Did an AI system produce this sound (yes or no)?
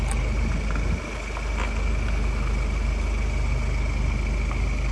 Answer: no